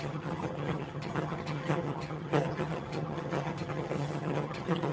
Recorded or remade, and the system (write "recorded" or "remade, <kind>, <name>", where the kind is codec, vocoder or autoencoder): remade, vocoder, HiFi-GAN